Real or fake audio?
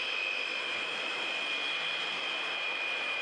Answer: real